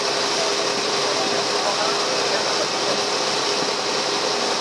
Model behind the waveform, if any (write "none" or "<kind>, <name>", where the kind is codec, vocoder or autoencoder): none